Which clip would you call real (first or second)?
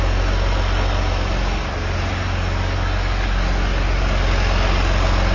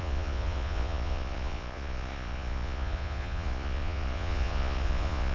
first